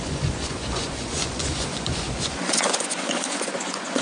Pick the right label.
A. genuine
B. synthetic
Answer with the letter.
B